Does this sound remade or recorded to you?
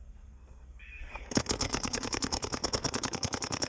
remade